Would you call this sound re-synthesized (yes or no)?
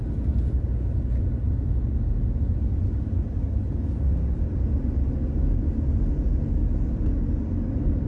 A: no